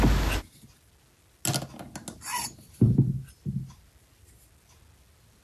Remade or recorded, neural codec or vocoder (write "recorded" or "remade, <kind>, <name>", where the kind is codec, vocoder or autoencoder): recorded